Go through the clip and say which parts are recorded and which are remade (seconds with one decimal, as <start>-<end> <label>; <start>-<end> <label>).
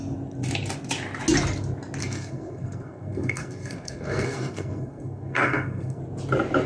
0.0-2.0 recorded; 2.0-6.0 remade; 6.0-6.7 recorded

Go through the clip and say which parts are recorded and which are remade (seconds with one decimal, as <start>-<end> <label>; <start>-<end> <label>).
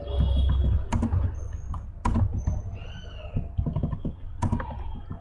0.0-5.2 recorded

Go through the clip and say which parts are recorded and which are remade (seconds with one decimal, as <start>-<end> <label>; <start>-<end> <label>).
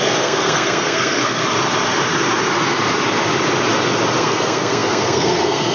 0.0-1.4 remade; 1.4-4.2 recorded; 4.2-5.7 remade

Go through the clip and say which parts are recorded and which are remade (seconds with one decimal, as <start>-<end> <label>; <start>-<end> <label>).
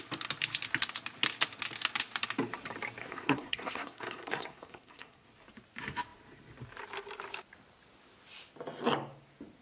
0.0-3.0 recorded; 3.0-5.3 remade; 5.3-9.6 recorded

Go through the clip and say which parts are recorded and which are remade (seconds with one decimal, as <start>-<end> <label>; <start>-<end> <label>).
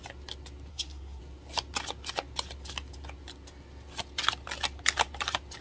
0.0-0.7 recorded; 0.7-1.2 remade; 1.2-5.6 recorded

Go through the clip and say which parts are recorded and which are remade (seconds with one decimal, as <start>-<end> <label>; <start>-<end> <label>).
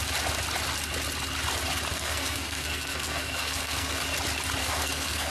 0.0-1.9 recorded; 1.9-4.0 remade; 4.0-4.6 recorded; 4.6-5.3 remade